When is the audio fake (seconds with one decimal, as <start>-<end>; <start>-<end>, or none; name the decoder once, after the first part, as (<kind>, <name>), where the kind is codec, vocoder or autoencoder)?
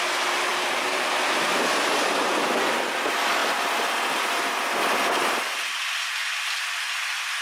0.5-1.1 (vocoder, BigVGAN v2)